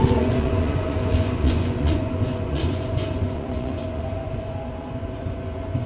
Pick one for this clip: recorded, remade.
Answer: remade